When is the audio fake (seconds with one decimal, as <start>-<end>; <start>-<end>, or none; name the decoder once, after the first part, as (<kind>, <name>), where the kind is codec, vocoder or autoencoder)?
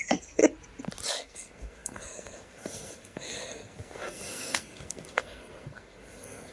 0.0-0.4 (codec, SNAC); 1.1-6.5